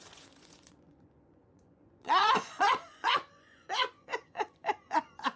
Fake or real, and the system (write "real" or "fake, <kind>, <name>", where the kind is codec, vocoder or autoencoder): fake, vocoder, Vocos